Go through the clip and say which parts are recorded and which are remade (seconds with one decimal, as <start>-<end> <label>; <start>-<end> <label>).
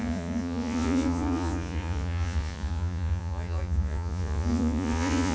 0.0-5.3 remade